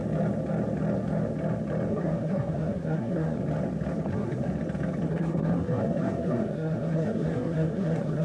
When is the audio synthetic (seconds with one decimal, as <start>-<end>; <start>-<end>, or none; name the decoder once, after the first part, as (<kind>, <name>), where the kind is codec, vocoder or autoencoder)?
1.9-3.4 (codec, SNAC); 4.1-4.5; 5.1-8.2

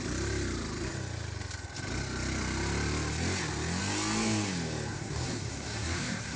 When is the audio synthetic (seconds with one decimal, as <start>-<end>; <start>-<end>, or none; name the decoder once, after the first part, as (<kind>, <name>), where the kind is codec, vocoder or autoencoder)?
4.9-6.4 (codec, SNAC)

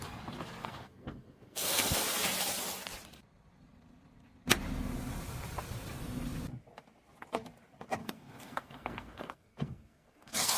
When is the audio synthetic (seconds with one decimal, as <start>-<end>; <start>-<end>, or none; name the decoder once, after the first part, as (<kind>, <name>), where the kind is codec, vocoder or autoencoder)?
0.6-2.0 (codec, SNAC); 8.0-10.6

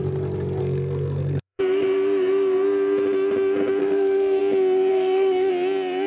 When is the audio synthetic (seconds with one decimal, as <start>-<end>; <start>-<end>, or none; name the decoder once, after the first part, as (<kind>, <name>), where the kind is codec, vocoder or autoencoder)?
0.6-1.6 (codec, SNAC); 3.8-4.4; 4.9-5.5

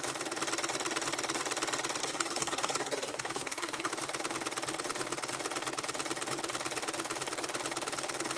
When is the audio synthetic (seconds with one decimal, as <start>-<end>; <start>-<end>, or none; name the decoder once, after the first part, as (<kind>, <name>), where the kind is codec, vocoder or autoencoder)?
2.0-3.9 (codec, SNAC)

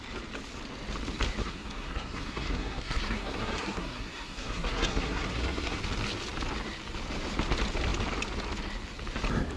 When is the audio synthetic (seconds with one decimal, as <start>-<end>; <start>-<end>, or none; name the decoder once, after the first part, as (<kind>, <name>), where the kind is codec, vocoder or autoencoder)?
1.4-5.8 (codec, SNAC)

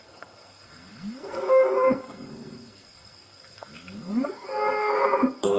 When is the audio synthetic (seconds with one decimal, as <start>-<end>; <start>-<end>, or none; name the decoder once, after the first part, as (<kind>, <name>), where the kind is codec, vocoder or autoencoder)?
0.0-5.6 (codec, SNAC)